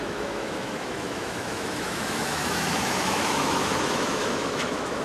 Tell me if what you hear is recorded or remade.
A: remade